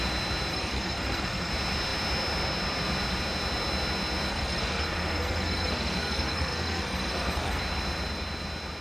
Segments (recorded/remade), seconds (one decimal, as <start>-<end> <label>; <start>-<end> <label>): 0.0-0.5 recorded; 0.5-1.5 remade; 1.5-4.3 recorded; 4.3-7.6 remade; 7.6-8.8 recorded